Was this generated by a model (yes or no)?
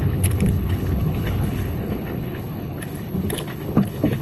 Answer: yes